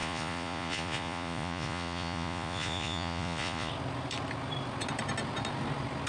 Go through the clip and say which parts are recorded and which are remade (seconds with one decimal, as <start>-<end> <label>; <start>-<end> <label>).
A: 0.0-3.7 remade; 3.7-6.1 recorded